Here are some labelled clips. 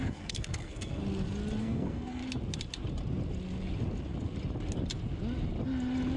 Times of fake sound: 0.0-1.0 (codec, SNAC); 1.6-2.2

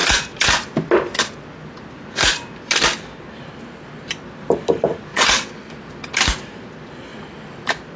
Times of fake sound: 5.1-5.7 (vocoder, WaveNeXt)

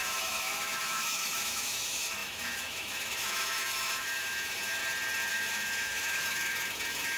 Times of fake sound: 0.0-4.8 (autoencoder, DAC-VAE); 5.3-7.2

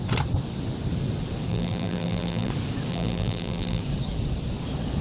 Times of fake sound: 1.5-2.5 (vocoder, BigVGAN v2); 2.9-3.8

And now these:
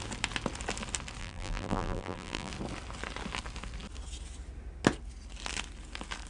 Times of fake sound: 1.2-2.5 (vocoder, BigVGAN v2)

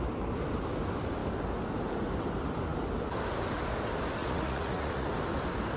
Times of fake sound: 4.2-5.1 (vocoder, Vocos)